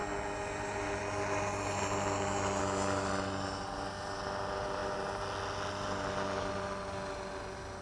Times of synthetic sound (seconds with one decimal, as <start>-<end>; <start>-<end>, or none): none